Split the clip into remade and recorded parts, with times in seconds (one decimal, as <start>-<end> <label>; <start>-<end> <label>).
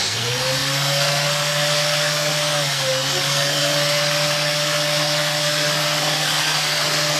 0.0-7.2 remade